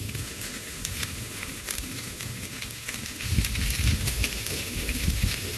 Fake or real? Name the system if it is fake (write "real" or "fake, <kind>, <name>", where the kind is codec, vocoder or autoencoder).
fake, autoencoder, DAC-VAE